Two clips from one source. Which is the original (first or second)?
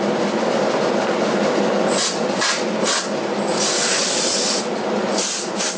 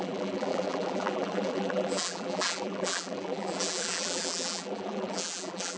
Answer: first